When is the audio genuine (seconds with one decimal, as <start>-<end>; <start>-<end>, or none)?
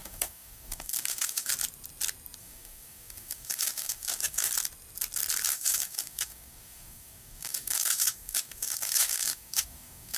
1.5-2.4; 4.5-5.5